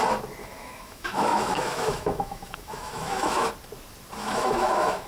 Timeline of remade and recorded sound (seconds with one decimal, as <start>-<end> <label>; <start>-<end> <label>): 0.0-0.4 recorded; 0.4-3.5 remade; 3.5-4.2 recorded; 4.2-5.1 remade